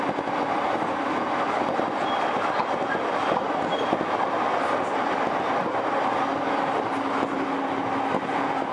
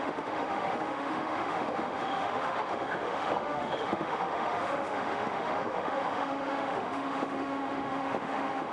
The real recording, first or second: first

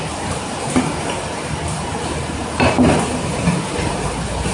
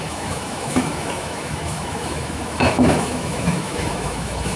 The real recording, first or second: first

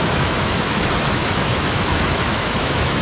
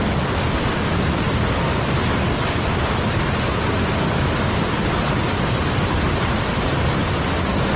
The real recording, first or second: second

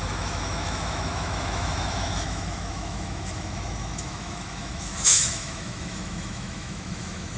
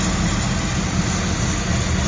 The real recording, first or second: second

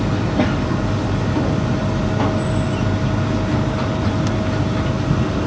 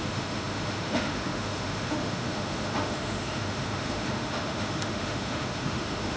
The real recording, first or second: first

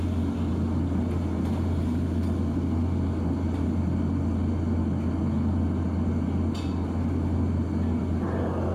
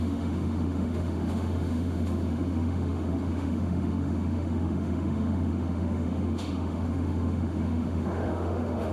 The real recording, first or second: first